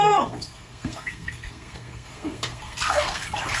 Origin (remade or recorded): remade